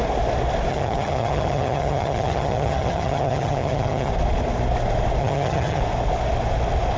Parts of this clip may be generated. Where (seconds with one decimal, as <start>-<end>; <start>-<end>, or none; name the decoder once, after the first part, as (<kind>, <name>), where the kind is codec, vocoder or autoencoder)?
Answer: 0.7-4.1 (vocoder, HiFi-GAN); 5.2-5.8